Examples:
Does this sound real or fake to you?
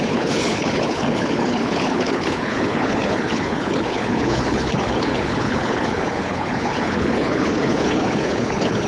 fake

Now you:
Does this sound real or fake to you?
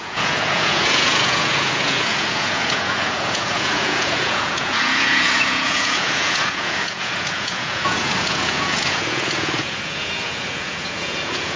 fake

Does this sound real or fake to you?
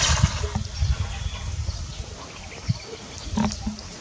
real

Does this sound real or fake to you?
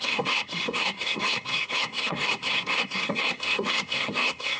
fake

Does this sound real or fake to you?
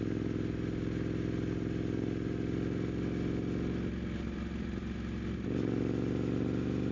real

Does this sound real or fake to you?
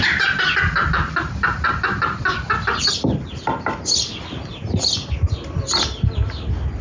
real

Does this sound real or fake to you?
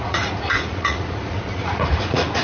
fake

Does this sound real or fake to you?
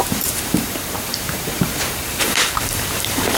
fake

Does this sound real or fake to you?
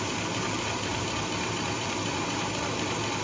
fake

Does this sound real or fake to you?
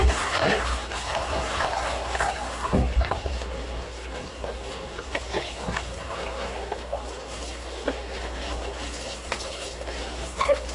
fake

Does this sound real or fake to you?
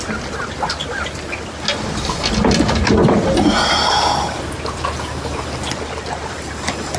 real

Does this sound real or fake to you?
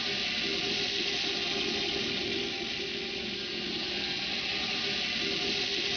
real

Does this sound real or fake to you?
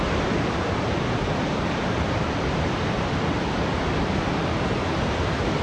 fake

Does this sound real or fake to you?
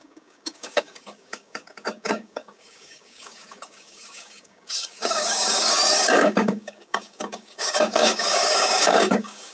fake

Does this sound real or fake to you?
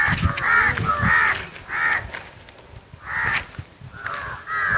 real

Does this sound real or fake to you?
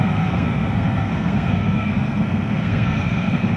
fake